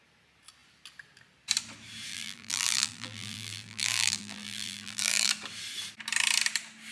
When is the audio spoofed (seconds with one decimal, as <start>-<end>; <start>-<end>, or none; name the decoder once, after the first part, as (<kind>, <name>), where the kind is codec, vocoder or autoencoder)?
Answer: 2.1-5.3 (vocoder, BigVGAN v2)